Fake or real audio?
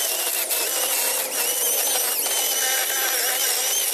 real